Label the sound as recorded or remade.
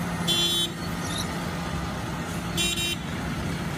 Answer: recorded